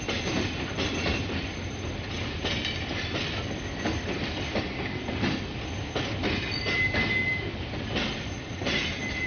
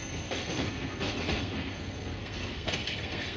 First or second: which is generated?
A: second